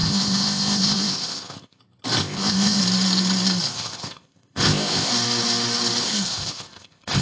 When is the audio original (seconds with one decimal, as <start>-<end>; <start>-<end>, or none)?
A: 1.8-2.2; 2.8-3.7; 5.1-6.0